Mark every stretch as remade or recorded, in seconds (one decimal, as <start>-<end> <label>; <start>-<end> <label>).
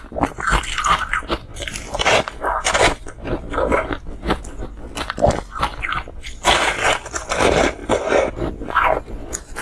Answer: 0.0-9.6 recorded